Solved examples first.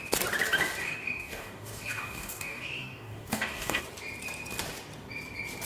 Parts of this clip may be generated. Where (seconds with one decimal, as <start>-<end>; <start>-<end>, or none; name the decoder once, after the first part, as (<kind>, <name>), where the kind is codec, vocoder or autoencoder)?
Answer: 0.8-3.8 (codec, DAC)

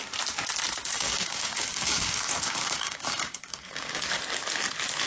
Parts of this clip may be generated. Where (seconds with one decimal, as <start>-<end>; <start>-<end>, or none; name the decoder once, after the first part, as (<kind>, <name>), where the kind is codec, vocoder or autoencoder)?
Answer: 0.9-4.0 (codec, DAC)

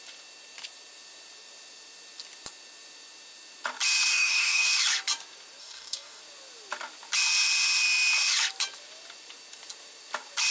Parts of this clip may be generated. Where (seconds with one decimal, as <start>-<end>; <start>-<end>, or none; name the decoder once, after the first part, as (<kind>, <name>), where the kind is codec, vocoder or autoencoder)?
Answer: 4.1-4.7 (codec, DAC); 5.6-6.2

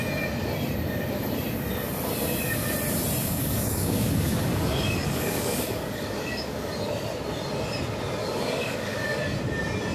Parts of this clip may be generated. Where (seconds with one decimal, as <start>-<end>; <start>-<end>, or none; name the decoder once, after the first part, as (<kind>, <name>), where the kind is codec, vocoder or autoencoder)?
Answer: 3.2-6.7 (codec, DAC); 8.2-9.2

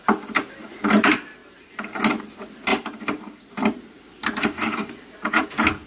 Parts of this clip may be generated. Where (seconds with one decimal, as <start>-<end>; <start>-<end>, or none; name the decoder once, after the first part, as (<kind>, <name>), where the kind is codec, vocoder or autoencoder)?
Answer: 4.4-4.9 (codec, DAC)

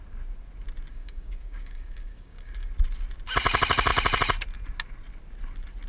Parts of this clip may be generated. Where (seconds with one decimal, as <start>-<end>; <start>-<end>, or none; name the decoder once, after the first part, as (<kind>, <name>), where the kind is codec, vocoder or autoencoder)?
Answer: 0.9-2.7 (codec, DAC)

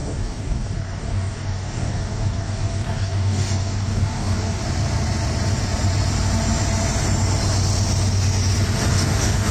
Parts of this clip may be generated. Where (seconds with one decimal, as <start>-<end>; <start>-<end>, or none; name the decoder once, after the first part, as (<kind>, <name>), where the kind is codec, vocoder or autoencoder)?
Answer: 0.0-4.6 (codec, DAC); 8.9-9.5

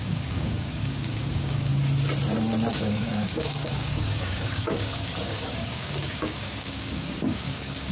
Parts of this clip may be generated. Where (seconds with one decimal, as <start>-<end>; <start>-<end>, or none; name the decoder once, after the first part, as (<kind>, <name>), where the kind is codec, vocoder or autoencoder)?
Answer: 0.0-1.7 (codec, DAC); 2.7-7.9